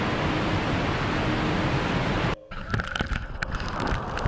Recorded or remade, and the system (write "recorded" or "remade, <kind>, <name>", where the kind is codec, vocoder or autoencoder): recorded